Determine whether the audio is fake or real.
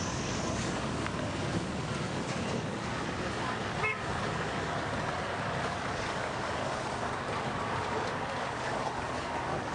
fake